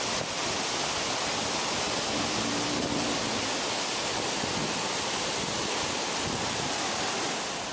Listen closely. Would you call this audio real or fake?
real